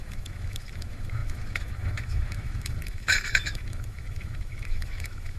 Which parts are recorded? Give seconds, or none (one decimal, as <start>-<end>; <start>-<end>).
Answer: none